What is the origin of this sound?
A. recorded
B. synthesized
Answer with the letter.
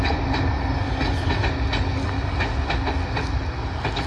A